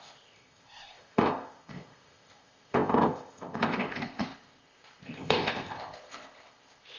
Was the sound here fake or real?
fake